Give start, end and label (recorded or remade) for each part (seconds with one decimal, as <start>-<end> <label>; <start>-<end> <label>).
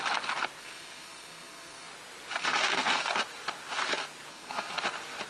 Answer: 0.0-0.6 recorded; 0.6-1.9 remade; 1.9-2.4 recorded; 2.4-3.1 remade; 3.1-4.3 recorded; 4.3-4.8 remade; 4.8-5.3 recorded